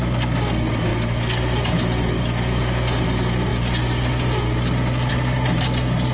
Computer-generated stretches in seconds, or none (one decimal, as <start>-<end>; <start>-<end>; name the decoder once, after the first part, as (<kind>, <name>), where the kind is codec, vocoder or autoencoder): none